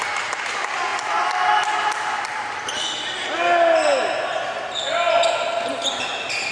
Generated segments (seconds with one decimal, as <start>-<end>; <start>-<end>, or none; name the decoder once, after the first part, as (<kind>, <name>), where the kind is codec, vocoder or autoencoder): none